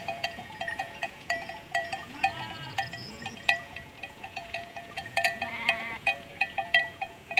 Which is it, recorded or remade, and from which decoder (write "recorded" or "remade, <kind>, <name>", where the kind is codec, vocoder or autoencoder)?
remade, vocoder, Vocos